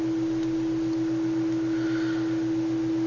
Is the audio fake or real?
real